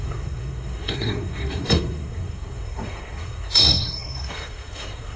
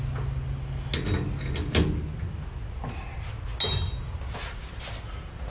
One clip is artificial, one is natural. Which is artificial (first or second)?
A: first